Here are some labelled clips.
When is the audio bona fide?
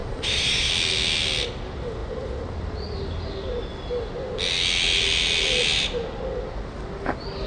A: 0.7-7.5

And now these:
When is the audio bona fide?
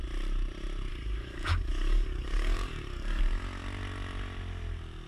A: 0.0-0.9; 3.2-5.1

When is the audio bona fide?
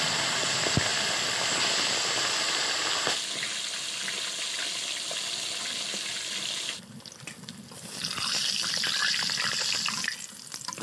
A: 0.0-10.8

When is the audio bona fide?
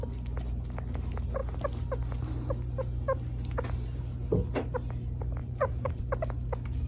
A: 0.0-5.4; 6.0-6.9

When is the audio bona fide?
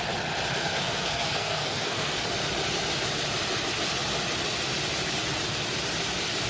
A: 0.0-0.6; 2.2-6.5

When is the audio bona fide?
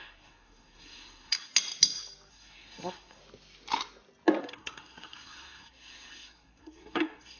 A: 1.5-2.3; 3.2-4.4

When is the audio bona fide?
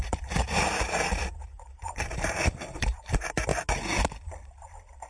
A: 3.5-5.1